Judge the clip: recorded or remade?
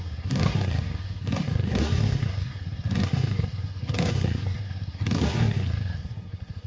remade